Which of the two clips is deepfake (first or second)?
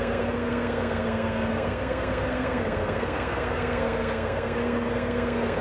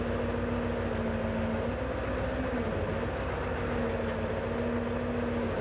first